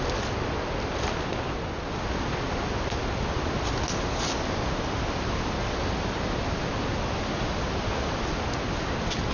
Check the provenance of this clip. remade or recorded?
recorded